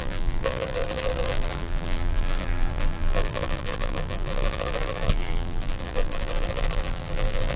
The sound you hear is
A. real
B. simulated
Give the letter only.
B